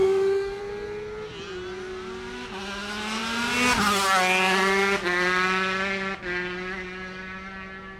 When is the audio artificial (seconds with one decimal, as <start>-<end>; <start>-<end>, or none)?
0.0-0.6